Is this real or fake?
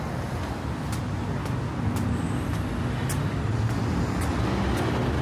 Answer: real